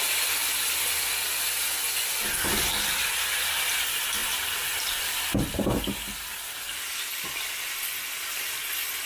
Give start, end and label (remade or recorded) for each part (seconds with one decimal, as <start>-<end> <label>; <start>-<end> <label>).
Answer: 0.0-9.1 recorded

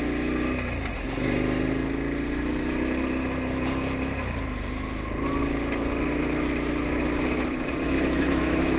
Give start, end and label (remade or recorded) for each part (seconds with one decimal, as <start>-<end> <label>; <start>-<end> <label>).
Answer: 0.0-7.8 recorded; 7.8-8.8 remade